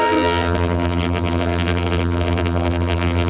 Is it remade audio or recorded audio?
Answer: remade